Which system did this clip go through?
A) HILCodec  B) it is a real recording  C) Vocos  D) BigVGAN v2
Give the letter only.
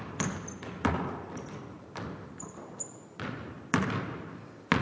D